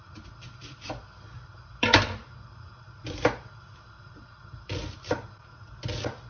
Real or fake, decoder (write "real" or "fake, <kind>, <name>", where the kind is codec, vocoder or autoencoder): real